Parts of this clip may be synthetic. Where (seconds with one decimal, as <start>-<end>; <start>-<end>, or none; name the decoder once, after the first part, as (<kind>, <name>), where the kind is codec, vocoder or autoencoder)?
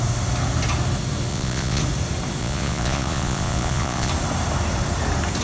1.3-1.8 (vocoder, Vocos); 2.4-4.1